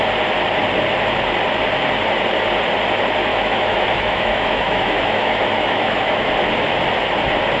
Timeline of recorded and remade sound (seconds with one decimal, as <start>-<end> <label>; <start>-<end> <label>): 0.0-3.3 recorded; 3.3-6.3 remade; 6.3-7.6 recorded